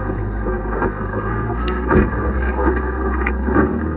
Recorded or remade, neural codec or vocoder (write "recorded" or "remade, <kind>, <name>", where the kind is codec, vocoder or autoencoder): remade, codec, SNAC